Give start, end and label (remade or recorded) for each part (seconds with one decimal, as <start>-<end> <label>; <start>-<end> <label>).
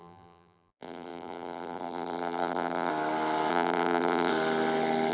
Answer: 0.0-2.9 remade; 2.9-3.5 recorded; 3.5-4.3 remade; 4.3-5.1 recorded